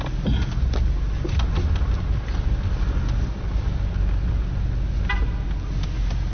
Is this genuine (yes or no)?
yes